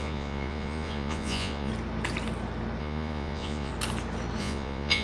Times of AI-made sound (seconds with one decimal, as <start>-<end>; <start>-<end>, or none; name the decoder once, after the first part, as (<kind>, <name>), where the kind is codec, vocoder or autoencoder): 0.0-1.7 (vocoder, Vocos); 2.8-3.7; 4.4-5.0